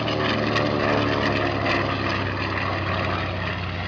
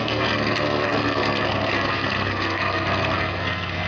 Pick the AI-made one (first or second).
second